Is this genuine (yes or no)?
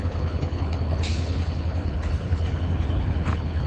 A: no